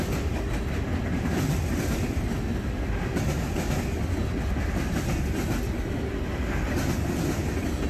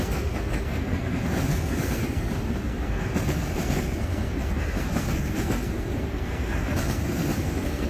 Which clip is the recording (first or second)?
first